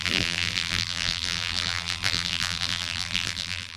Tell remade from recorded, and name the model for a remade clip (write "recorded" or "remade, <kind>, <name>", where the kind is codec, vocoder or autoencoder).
remade, vocoder, BigVGAN v2